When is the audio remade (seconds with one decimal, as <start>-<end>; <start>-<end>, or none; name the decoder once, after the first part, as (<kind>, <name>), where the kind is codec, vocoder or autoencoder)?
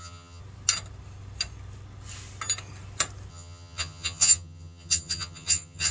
0.0-0.4 (vocoder, HiFi-GAN); 3.3-5.9